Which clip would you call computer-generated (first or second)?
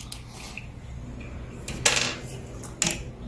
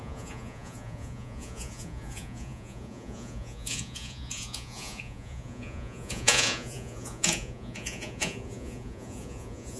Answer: second